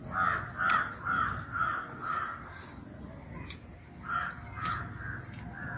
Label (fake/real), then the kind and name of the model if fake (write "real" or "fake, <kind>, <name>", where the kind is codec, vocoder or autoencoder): real